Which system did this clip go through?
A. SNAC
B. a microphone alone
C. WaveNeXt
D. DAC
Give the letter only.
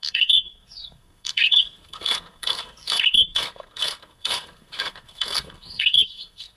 A